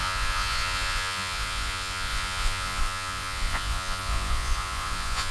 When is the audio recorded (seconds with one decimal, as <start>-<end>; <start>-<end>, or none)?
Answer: none